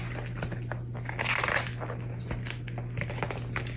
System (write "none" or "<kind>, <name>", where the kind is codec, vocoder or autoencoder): none